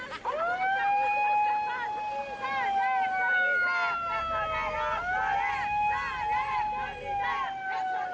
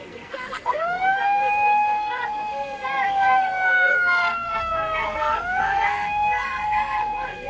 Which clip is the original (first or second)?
first